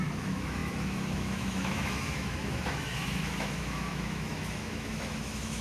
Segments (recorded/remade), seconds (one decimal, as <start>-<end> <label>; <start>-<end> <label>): 0.0-5.6 remade